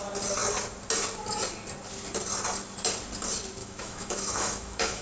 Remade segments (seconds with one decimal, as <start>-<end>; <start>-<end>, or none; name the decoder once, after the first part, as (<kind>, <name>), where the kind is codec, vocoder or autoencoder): 3.6-5.0 (autoencoder, DAC-VAE)